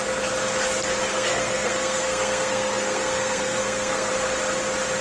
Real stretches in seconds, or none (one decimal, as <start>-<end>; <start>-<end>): 0.0-1.1; 4.1-5.0